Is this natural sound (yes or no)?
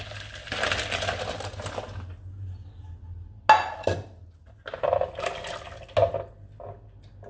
yes